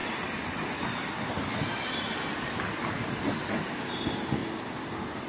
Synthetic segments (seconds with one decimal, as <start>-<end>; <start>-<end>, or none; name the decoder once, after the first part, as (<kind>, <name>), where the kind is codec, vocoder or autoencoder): none